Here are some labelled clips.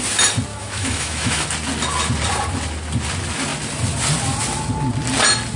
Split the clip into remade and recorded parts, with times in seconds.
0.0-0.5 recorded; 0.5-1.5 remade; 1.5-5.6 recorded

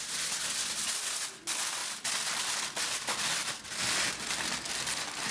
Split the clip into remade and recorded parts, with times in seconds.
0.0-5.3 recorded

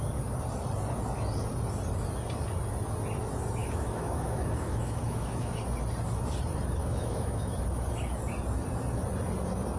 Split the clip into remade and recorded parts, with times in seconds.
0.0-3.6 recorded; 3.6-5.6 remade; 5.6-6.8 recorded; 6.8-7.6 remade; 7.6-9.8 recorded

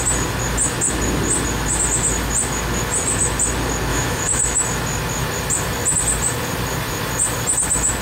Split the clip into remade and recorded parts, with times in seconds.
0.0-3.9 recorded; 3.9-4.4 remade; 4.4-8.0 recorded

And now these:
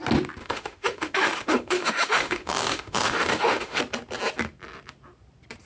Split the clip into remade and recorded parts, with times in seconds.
0.0-0.4 recorded; 0.4-3.8 remade; 3.8-5.7 recorded

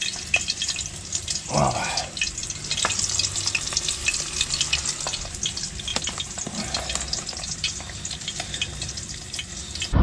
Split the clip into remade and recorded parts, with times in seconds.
0.0-10.0 recorded

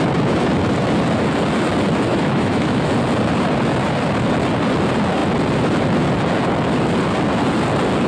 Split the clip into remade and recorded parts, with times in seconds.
0.0-2.1 recorded; 2.1-2.9 remade; 2.9-8.1 recorded

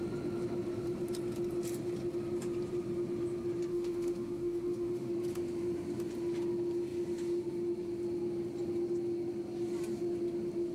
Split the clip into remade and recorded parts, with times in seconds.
0.0-3.7 recorded; 3.7-5.1 remade; 5.1-10.7 recorded